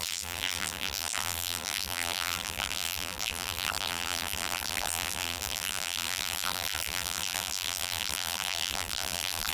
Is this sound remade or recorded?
remade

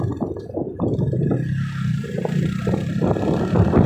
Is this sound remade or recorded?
recorded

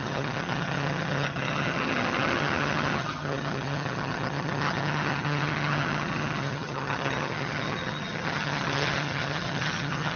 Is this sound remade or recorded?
remade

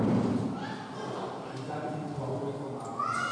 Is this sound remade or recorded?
recorded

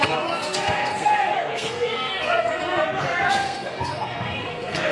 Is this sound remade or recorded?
remade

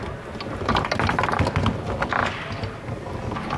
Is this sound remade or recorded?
recorded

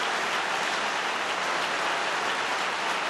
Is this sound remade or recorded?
recorded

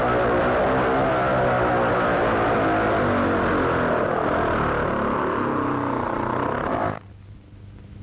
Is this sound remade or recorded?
recorded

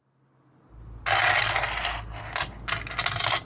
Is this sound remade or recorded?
recorded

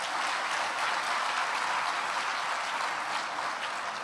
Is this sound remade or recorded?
recorded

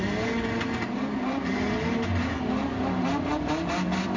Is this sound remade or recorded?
recorded